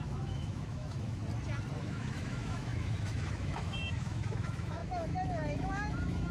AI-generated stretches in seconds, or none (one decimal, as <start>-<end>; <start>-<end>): 0.0-1.2; 1.8-6.3